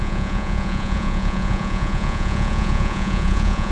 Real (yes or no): no